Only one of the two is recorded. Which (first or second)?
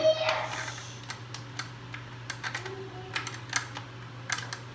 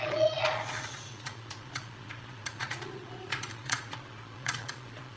first